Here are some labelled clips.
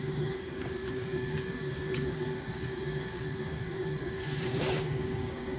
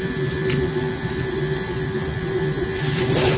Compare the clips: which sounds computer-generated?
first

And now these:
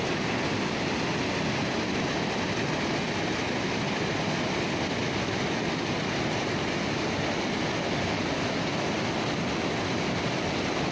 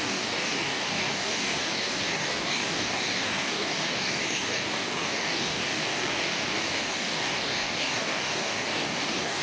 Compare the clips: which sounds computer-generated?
second